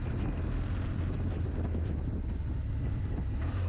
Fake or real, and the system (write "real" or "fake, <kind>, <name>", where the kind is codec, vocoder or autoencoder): real